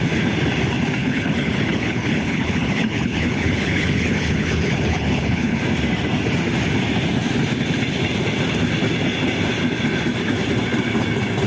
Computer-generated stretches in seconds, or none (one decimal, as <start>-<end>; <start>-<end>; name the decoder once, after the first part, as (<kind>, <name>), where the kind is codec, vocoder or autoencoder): 1.0-5.6 (codec, HILCodec)